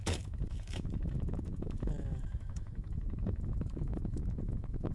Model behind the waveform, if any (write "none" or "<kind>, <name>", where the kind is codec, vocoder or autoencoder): autoencoder, DAC-VAE